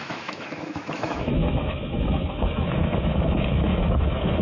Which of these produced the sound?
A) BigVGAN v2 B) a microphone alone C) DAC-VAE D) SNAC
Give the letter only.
C